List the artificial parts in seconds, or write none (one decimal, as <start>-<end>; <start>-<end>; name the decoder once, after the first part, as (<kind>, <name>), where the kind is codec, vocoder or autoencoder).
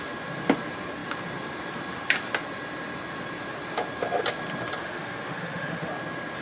4.8-5.9 (autoencoder, DAC-VAE)